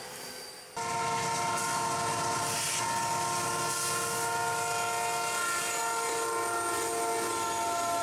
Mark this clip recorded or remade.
recorded